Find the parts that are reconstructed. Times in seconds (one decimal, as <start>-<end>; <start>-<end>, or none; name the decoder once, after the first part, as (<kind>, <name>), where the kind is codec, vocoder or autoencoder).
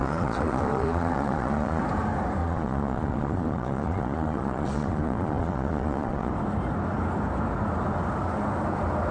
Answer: 0.0-1.8 (vocoder, Vocos); 2.4-6.3